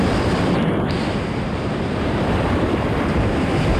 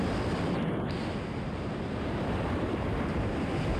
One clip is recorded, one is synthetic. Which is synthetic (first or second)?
first